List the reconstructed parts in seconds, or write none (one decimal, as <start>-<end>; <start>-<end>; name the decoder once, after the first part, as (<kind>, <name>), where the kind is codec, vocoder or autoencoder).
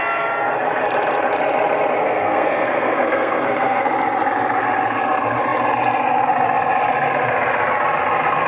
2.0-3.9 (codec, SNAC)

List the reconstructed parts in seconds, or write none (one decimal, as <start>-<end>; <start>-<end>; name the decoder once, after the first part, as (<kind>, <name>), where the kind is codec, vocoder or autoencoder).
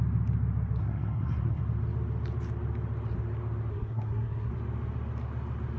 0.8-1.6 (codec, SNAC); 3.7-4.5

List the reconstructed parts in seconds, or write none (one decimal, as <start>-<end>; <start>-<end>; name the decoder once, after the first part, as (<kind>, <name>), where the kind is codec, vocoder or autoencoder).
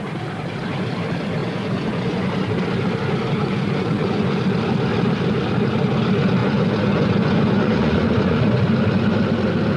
1.4-2.3 (vocoder, Vocos); 3.4-4.4; 6.4-8.6